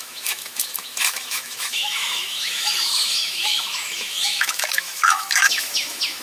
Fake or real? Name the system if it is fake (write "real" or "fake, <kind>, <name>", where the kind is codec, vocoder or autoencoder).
fake, autoencoder, DAC-VAE